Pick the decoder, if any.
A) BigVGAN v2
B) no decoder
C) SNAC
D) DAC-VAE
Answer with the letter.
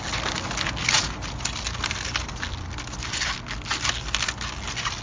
B